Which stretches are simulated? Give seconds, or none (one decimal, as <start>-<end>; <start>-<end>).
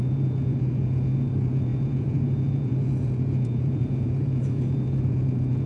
0.0-5.7